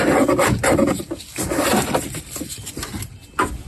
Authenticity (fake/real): real